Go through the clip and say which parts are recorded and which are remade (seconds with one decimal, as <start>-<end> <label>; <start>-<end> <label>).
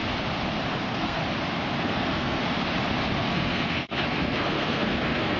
0.0-0.7 recorded; 0.7-1.2 remade; 1.2-1.8 recorded; 1.8-2.4 remade; 2.4-3.2 recorded; 3.2-5.4 remade